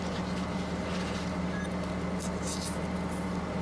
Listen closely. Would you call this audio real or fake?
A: real